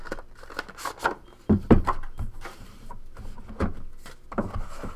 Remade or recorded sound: recorded